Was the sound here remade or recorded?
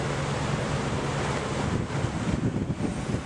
recorded